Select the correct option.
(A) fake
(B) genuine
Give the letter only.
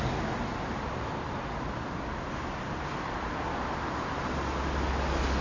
B